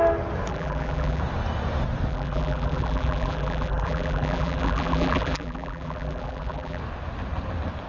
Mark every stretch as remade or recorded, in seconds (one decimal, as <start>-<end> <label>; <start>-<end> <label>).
0.0-0.5 recorded; 0.5-1.2 remade; 1.2-2.1 recorded; 2.1-6.8 remade; 6.8-7.9 recorded